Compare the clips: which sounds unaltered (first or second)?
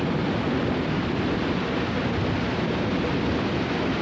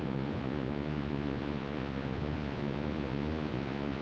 first